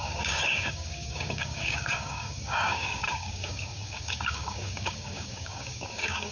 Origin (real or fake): fake